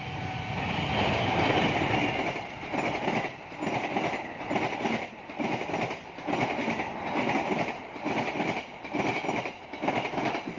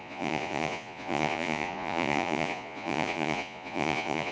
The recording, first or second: first